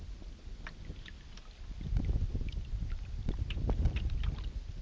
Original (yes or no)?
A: yes